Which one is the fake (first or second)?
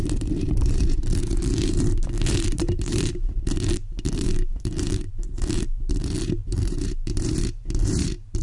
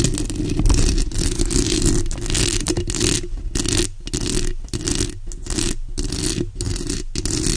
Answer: first